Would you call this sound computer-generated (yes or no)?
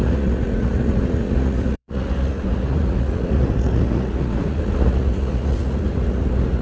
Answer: yes